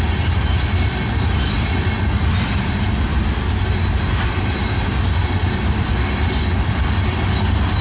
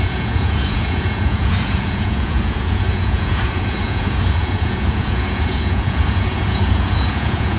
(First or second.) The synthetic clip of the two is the second